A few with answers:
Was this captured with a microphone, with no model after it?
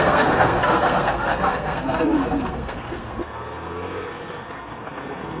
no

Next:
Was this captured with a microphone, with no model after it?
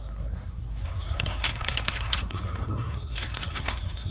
no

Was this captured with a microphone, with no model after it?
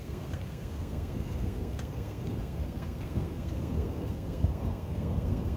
no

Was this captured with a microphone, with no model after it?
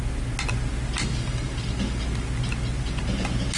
yes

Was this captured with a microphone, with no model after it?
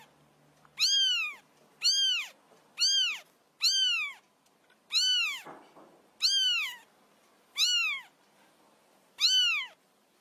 yes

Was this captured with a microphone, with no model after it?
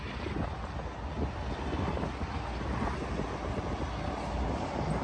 yes